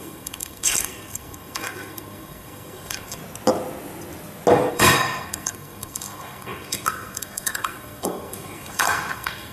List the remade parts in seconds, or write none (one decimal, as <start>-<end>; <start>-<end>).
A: 0.0-3.2; 4.7-9.5